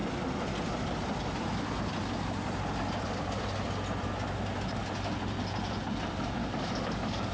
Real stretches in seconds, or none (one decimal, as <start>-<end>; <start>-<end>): 0.0-6.4